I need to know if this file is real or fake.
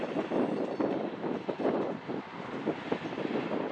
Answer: real